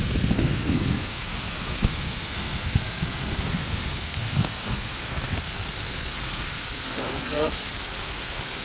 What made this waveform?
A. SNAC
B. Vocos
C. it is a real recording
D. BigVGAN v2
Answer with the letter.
A